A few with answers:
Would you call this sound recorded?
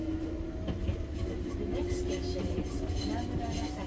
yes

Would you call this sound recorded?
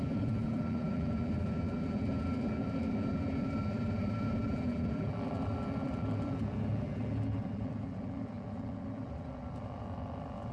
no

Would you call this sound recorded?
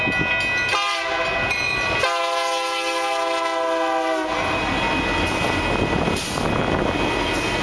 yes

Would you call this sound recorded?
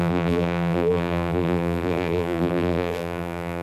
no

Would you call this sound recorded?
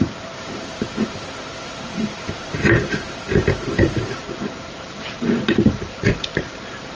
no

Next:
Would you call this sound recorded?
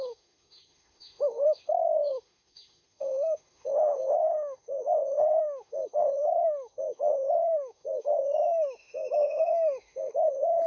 no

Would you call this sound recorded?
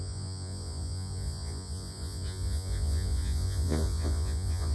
no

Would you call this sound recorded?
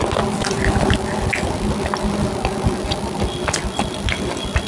yes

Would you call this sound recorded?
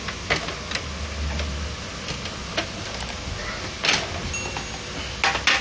yes